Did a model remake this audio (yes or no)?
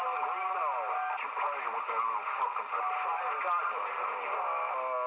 no